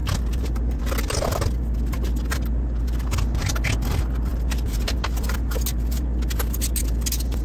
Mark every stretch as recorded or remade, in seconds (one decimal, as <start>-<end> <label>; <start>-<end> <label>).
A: 0.0-7.4 recorded